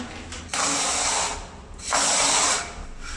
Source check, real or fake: real